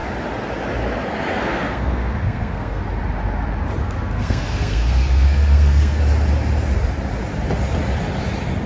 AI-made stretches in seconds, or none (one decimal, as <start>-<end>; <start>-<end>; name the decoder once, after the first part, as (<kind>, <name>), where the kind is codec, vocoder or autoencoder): 1.3-2.8 (codec, SNAC); 3.8-6.0